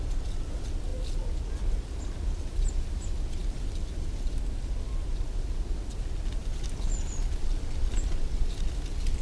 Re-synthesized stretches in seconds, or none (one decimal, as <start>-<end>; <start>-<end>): none